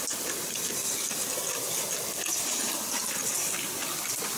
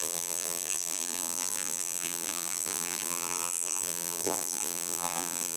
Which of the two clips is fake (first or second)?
second